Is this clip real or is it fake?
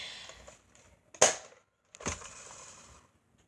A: real